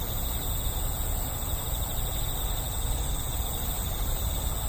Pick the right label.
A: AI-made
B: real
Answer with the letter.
B